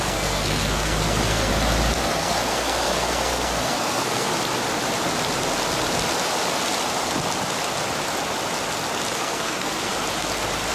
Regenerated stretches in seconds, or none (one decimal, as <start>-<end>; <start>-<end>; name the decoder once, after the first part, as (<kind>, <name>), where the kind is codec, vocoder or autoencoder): 0.0-1.5 (codec, SNAC); 2.0-4.3; 9.1-9.9